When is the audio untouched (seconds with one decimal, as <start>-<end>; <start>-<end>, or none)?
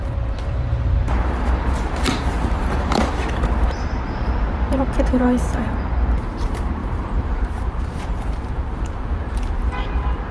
none